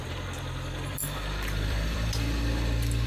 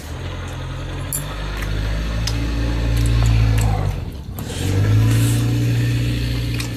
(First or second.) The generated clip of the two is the first